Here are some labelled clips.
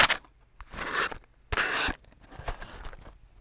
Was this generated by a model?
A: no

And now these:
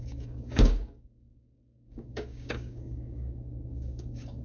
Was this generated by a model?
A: yes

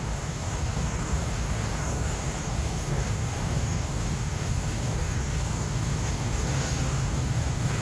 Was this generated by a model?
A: yes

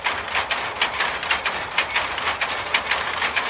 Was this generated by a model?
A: no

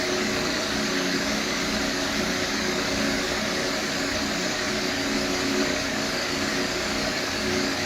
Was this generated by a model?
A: yes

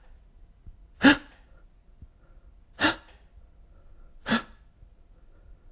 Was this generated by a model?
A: no